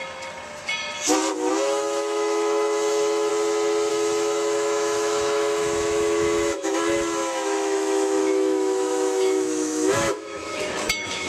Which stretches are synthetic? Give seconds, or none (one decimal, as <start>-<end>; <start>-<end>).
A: 1.5-3.3; 3.9-11.3